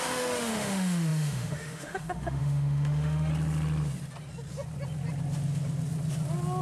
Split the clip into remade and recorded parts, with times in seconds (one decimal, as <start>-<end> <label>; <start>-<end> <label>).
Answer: 0.0-3.3 remade; 3.3-6.6 recorded